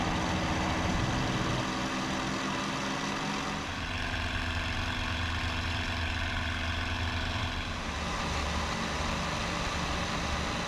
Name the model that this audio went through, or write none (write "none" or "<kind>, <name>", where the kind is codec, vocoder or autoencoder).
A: none